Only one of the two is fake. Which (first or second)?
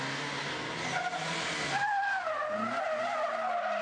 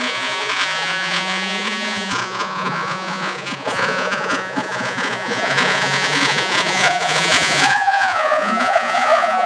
second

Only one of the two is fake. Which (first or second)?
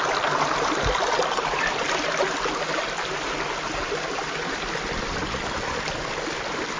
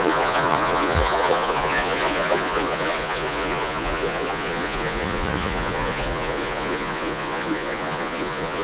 second